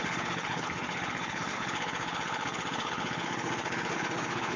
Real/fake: fake